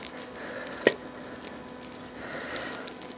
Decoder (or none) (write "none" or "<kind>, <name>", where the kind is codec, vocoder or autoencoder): none